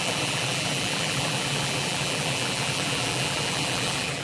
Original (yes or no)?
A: no